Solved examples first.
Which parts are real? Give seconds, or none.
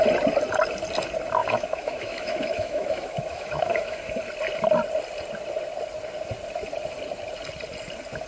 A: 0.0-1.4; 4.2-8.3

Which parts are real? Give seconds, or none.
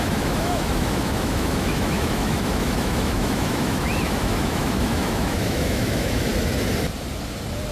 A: 6.3-7.7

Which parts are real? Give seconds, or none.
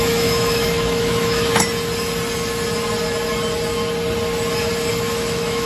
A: 1.5-4.9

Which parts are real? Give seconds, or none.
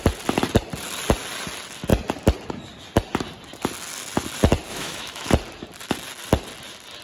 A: 0.0-4.7; 5.3-7.0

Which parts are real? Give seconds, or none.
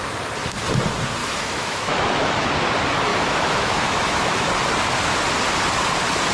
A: 0.0-1.2; 2.5-3.1; 4.5-6.3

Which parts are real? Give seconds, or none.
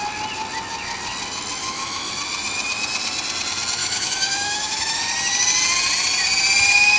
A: 0.0-1.6; 2.1-3.8; 5.0-7.0